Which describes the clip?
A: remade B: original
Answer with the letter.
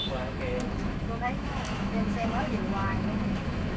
A